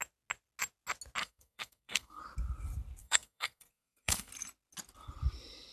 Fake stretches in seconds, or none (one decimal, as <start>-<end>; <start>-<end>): 1.2-2.2; 3.0-4.3